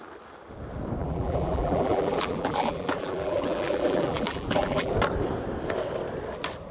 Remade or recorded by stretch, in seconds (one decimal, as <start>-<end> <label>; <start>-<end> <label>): 0.0-1.0 recorded; 1.0-4.9 remade; 4.9-6.7 recorded